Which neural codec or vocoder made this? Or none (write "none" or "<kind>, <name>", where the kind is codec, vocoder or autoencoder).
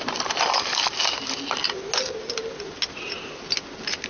none